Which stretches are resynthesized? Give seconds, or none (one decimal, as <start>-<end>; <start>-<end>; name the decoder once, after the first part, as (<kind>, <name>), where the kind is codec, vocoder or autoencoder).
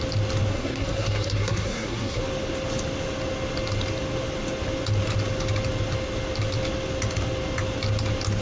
0.5-2.2 (codec, SNAC)